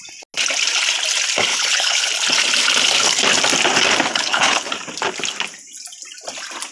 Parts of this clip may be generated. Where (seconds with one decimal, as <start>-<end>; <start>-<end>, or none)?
1.5-2.1; 4.1-4.7

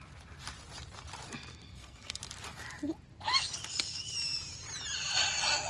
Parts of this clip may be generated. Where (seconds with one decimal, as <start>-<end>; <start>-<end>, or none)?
1.5-2.2

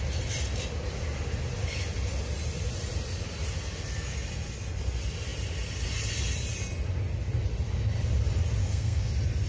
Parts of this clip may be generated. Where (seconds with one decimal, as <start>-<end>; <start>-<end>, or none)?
8.6-9.1

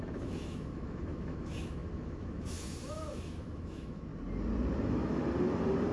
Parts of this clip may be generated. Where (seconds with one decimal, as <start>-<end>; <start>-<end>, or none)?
0.0-4.1; 4.8-5.2

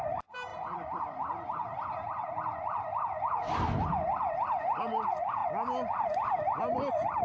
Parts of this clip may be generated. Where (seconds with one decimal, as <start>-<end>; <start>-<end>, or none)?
none